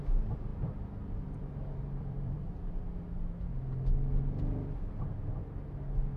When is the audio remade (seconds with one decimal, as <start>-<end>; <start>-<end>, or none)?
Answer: 0.5-2.9